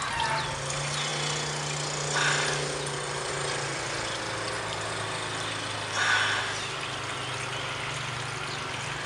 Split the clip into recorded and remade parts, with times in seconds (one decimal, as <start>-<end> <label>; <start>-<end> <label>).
0.0-9.1 recorded